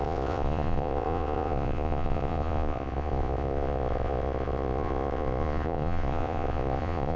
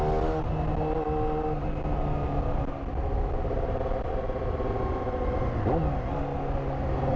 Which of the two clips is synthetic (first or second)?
first